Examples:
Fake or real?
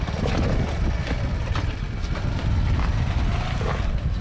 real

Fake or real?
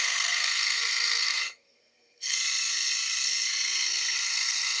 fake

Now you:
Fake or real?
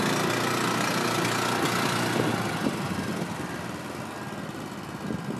real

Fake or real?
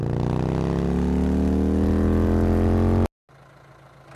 real